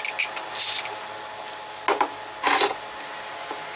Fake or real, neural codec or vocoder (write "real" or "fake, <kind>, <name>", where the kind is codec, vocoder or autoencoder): real